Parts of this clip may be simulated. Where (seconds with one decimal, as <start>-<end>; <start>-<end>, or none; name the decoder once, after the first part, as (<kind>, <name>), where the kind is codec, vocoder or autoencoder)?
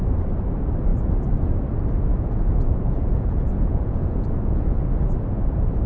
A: 2.1-4.8 (vocoder, Vocos)